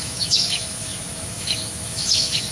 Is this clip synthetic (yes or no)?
yes